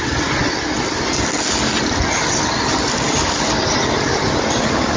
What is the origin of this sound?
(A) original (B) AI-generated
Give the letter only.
A